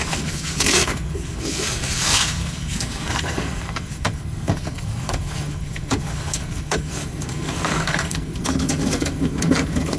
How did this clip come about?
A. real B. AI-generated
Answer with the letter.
B